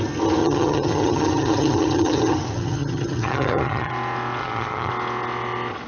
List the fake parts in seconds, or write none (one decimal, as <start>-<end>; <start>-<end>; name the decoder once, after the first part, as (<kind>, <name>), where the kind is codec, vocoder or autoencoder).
0.4-3.9 (vocoder, HiFi-GAN); 4.4-4.9